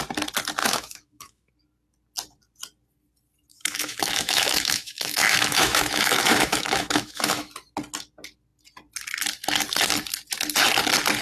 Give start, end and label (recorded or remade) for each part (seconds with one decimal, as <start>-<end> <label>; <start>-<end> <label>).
0.0-0.6 recorded; 0.6-1.5 remade; 1.5-3.5 recorded; 3.5-7.5 remade; 7.5-11.2 recorded